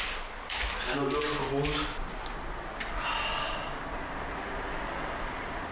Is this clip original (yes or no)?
yes